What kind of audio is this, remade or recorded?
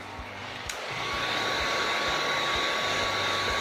remade